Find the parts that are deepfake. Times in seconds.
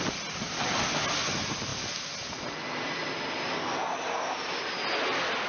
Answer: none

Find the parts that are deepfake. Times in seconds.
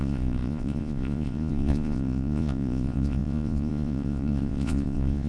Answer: 0.0-5.3 (vocoder, Vocos)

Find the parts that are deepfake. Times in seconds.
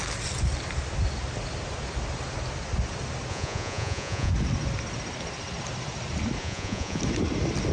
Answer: 3.3-4.3 (vocoder, Vocos); 6.4-7.0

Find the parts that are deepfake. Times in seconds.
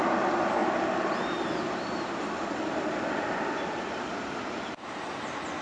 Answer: none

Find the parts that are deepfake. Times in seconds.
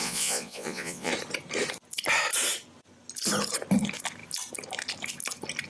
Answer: 0.0-1.1 (vocoder, Vocos)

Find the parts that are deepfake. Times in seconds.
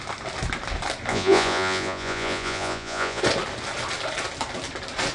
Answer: 1.1-3.2 (vocoder, Vocos)